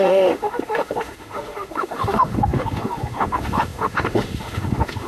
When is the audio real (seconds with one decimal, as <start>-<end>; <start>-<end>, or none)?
none